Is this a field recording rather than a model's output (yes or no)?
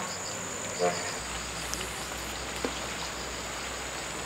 yes